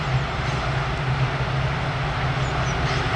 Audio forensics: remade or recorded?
recorded